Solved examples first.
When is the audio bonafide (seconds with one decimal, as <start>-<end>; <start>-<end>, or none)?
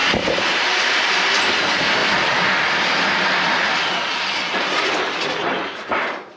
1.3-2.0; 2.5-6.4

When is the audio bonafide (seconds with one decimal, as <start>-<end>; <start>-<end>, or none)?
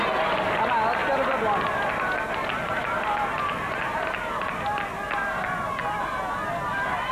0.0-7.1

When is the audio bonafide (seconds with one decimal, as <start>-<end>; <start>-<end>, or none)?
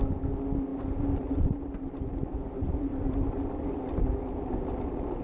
0.0-0.7; 3.8-5.2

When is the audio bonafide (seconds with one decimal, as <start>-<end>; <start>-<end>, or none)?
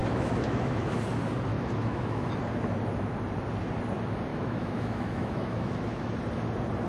1.0-1.5; 2.3-4.3; 6.1-6.9